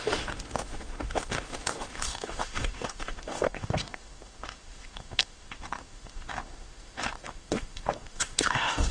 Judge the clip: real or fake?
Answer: fake